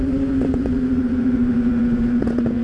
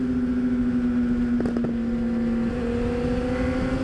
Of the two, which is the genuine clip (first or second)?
second